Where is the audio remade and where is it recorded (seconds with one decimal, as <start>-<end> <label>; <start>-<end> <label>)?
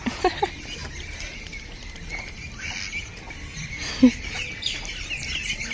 0.0-5.7 recorded